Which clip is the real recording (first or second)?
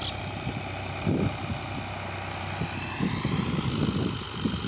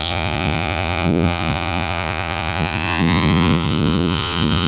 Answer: first